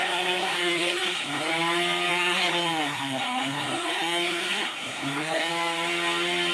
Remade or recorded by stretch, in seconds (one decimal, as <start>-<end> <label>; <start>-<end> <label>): 0.0-1.5 remade; 1.5-2.1 recorded; 2.1-5.5 remade; 5.5-6.5 recorded